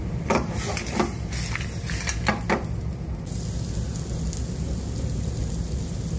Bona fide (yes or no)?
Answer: yes